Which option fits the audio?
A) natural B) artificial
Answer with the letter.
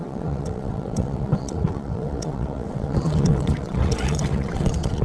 B